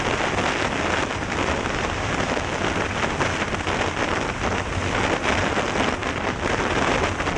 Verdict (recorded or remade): recorded